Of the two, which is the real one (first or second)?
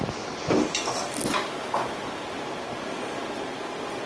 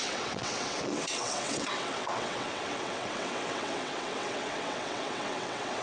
first